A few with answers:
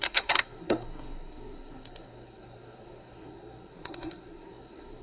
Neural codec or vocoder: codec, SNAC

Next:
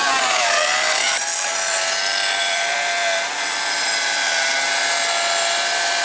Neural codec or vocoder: none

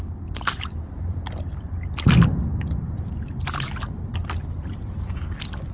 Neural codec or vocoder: none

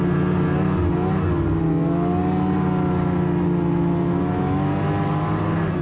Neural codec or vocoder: none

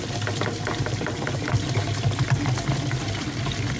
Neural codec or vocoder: none